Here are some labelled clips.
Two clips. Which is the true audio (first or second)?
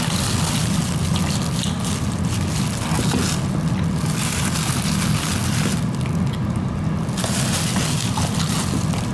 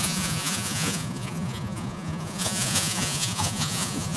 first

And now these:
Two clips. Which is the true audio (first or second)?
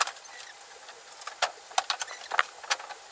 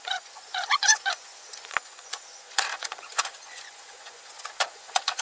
first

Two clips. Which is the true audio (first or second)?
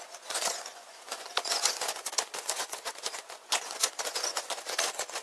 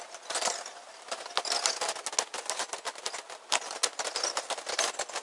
second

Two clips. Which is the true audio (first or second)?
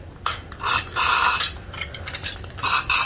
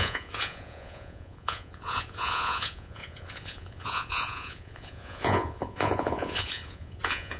first